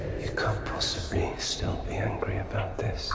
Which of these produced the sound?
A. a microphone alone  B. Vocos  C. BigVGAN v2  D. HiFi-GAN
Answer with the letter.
A